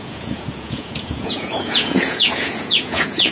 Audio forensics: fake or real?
fake